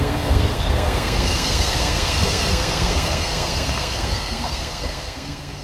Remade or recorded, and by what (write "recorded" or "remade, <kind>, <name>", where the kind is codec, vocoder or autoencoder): remade, codec, SNAC